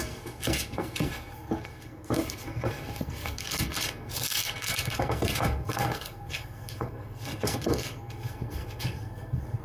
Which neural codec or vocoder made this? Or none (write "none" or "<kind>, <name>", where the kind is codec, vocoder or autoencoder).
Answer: codec, SNAC